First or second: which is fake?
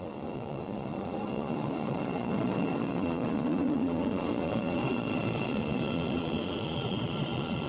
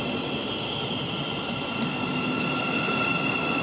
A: first